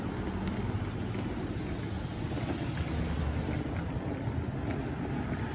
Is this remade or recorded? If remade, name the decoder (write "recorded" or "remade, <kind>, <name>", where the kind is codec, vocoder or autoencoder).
recorded